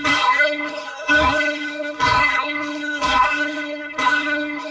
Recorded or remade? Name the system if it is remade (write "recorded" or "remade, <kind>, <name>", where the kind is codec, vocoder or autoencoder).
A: remade, codec, SNAC